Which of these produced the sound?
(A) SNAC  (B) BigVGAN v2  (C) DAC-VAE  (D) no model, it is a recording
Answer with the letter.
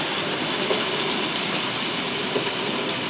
D